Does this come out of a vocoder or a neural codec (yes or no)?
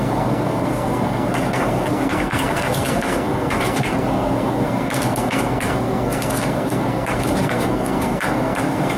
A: yes